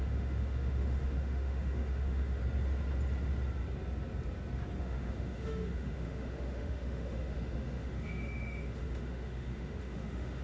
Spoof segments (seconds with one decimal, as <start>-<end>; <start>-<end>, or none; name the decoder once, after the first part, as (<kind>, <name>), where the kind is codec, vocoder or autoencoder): 0.0-2.4 (autoencoder, DAC-VAE); 4.8-10.4